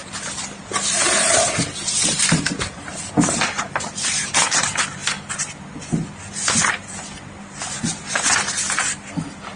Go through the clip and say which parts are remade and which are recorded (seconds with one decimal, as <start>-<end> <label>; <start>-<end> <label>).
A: 0.0-2.3 remade; 2.3-9.6 recorded